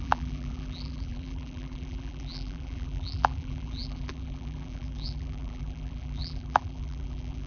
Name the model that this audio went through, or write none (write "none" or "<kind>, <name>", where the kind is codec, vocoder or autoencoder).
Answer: vocoder, BigVGAN v2